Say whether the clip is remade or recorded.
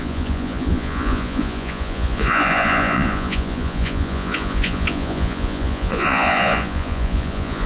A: remade